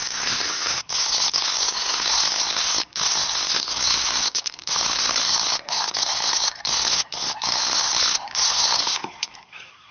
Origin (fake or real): fake